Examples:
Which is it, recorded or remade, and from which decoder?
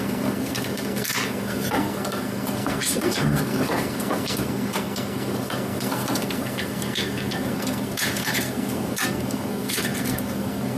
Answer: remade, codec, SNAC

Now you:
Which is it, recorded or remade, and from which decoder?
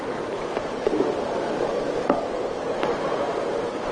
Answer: remade, vocoder, BigVGAN v2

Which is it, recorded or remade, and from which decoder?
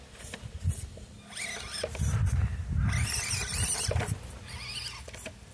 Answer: recorded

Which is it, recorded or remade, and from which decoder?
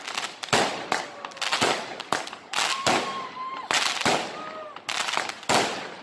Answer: recorded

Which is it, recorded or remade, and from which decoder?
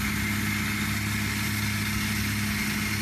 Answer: recorded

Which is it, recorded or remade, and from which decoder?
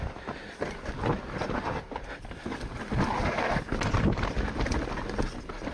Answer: recorded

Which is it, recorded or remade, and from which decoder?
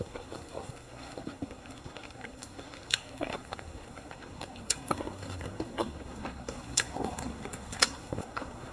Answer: remade, codec, SNAC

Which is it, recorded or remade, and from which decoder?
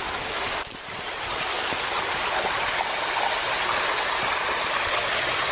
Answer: recorded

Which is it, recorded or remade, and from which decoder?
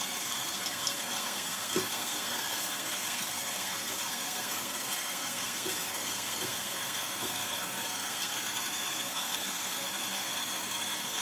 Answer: remade, codec, SNAC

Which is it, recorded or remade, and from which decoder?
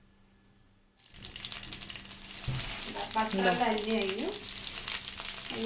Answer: recorded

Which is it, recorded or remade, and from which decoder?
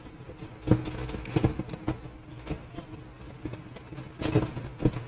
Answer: recorded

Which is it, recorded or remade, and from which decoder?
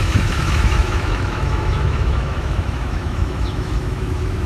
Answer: remade, autoencoder, DAC-VAE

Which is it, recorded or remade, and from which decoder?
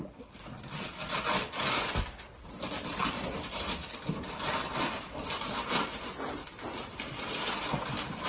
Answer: recorded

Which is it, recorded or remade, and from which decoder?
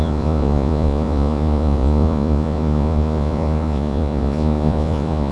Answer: remade, vocoder, Vocos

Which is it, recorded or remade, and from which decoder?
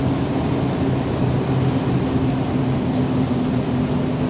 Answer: recorded